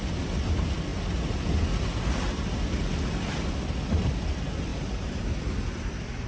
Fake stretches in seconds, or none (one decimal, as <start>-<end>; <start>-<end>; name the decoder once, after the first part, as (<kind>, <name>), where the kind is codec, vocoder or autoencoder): 4.7-5.2 (vocoder, BigVGAN v2)